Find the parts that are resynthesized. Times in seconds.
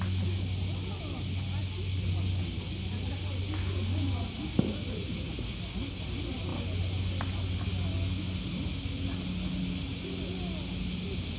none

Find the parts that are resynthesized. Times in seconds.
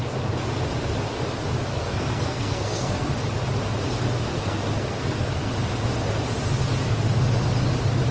1.7-3.1; 4.3-5.5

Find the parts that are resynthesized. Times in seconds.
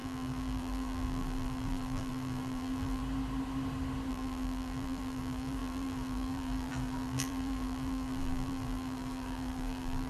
0.0-3.0; 4.1-10.1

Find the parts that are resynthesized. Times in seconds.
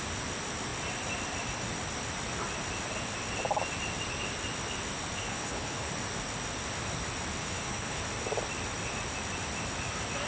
5.2-5.9; 7.4-8.0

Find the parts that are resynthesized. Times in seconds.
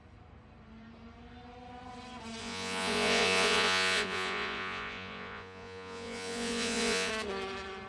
2.4-7.1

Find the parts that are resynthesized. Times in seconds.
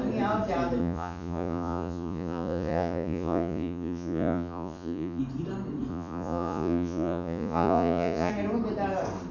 0.8-5.2; 5.9-8.3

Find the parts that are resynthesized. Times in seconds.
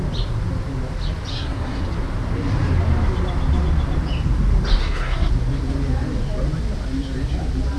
1.3-1.8; 4.8-5.3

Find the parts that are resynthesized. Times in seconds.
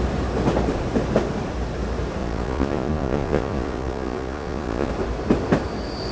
2.2-4.9